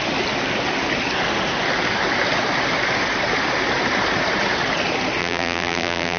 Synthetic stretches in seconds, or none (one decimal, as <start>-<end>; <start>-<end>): 5.2-6.2